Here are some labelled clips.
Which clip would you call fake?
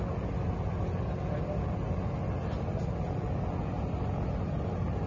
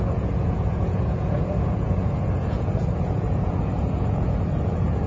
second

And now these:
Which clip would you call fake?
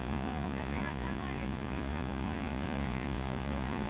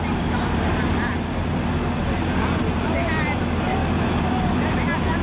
first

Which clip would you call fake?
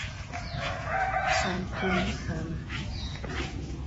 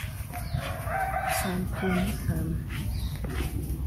first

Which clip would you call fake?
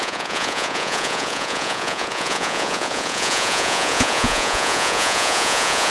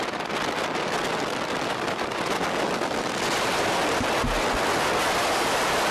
first